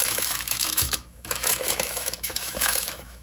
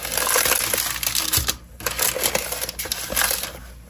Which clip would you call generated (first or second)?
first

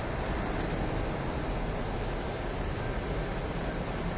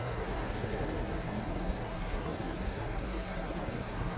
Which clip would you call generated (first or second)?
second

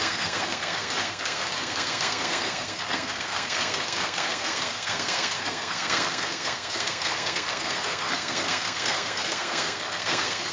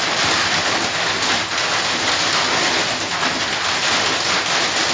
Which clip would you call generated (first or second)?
first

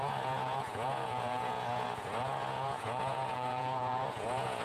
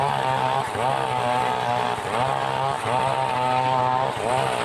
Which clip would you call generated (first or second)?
first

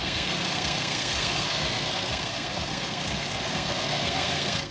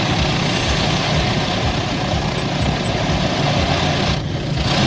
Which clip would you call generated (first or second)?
first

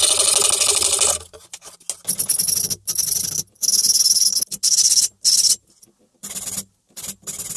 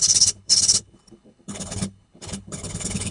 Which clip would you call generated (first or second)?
second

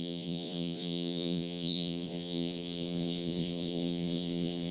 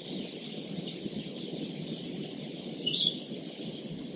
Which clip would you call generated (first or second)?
first